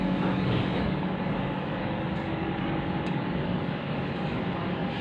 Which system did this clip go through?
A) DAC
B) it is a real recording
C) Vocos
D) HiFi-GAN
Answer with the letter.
A